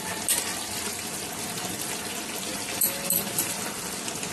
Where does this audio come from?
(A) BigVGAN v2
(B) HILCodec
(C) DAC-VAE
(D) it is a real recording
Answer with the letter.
D